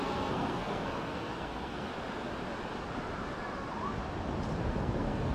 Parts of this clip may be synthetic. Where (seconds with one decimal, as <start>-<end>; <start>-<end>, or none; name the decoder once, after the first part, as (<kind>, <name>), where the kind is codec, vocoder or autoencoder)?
0.0-1.9 (codec, SNAC); 4.7-5.3